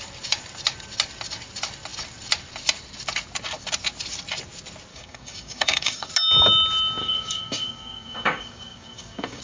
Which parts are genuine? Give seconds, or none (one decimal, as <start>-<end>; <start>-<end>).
0.0-4.9; 6.1-7.0